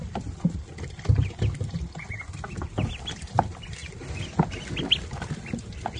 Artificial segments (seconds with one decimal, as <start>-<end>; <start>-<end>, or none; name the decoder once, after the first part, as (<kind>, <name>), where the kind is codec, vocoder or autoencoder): none